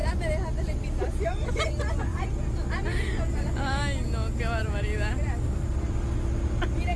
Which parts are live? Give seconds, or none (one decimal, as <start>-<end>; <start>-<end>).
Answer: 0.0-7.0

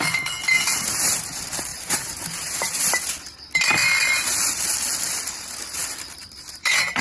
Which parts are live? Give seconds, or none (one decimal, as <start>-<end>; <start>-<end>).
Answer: 0.0-1.7; 2.9-7.0

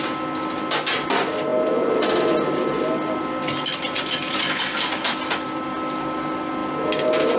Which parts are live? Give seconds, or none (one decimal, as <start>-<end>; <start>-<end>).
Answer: 0.0-7.4